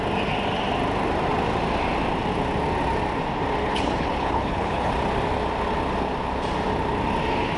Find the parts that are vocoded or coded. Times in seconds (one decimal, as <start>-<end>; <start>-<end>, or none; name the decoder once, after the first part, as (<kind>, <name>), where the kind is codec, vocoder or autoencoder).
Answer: 3.6-4.9 (codec, HILCodec)